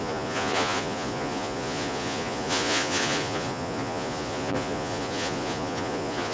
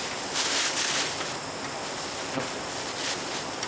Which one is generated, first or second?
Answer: first